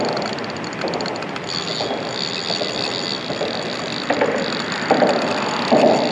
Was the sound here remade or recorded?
recorded